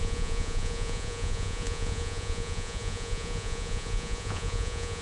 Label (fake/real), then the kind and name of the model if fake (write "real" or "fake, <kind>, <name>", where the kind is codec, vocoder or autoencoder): fake, vocoder, Vocos